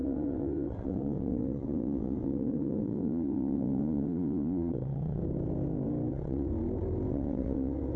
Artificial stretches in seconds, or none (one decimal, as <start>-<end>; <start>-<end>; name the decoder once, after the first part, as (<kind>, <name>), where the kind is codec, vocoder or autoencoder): 0.0-5.2 (vocoder, WaveNeXt); 6.1-6.5; 7.1-8.0